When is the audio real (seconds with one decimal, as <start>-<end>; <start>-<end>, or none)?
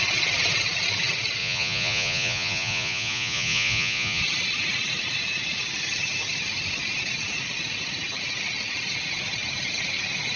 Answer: 0.0-1.4; 4.2-10.4